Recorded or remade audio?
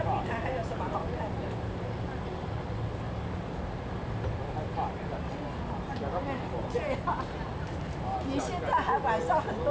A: recorded